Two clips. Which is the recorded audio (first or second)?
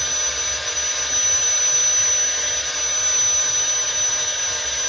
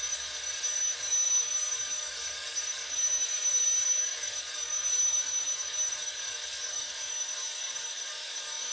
first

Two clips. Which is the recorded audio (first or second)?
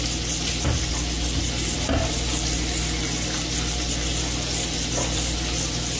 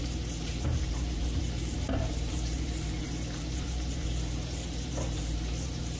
first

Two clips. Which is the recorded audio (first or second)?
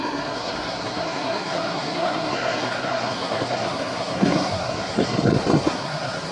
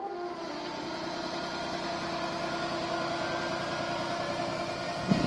second